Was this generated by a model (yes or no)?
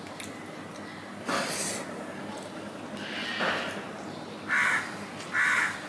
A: no